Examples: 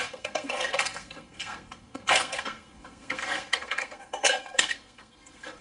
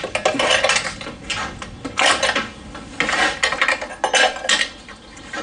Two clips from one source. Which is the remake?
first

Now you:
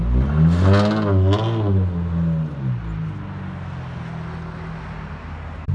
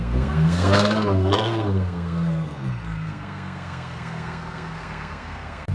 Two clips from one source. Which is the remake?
second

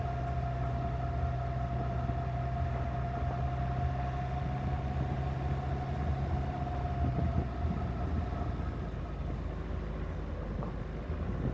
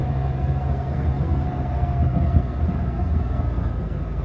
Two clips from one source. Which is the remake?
second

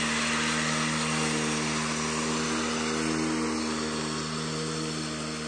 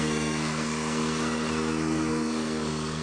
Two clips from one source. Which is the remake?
second